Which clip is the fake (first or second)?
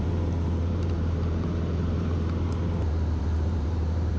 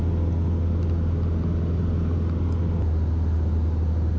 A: first